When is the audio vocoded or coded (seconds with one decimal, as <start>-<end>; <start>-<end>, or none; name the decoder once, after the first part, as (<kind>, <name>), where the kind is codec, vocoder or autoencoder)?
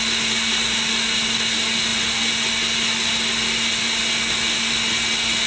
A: none